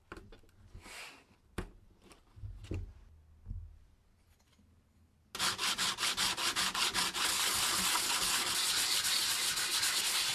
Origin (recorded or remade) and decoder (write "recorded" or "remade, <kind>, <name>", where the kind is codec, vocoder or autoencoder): recorded